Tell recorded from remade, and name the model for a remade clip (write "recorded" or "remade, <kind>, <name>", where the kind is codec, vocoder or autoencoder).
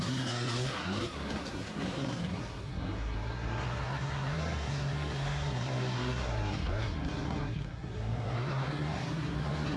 remade, codec, SNAC